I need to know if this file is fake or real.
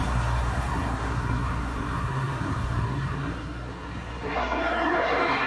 fake